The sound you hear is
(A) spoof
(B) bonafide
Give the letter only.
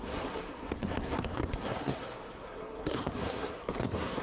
A